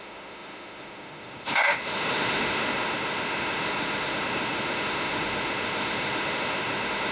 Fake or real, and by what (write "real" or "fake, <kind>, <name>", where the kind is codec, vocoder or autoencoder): fake, autoencoder, DAC-VAE